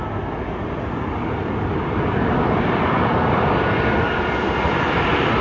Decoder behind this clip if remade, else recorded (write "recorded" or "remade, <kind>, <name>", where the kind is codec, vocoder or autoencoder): recorded